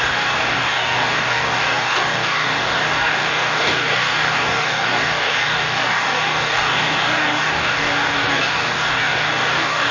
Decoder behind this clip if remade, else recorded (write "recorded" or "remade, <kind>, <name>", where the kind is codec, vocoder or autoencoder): remade, codec, DAC